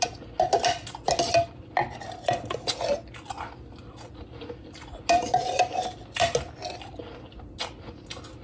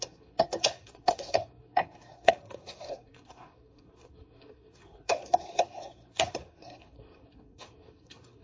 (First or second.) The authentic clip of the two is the first